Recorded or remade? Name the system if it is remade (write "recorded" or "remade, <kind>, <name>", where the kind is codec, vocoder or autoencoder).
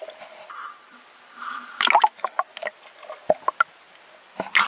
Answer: recorded